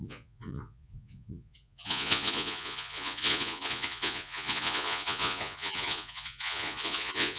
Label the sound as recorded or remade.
remade